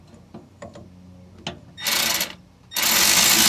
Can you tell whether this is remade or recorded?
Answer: recorded